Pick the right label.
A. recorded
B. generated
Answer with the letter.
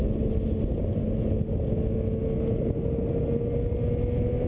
A